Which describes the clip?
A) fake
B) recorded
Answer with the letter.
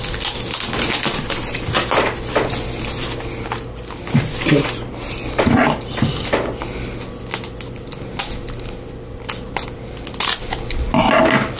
B